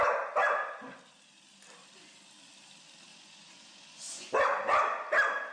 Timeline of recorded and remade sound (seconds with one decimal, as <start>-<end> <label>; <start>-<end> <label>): 0.0-3.1 recorded; 3.1-4.3 remade; 4.3-5.5 recorded